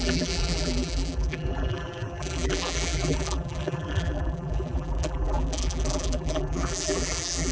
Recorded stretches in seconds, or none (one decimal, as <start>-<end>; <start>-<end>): none